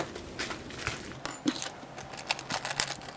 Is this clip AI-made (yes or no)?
no